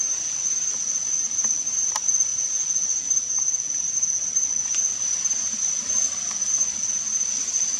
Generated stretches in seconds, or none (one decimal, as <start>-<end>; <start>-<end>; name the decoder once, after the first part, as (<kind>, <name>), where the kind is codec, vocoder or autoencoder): none